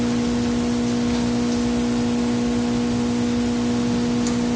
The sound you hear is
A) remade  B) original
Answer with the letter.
B